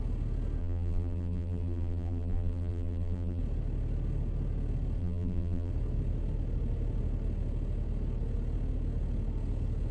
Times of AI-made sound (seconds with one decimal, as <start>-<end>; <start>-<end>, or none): 0.6-3.4; 5.0-5.7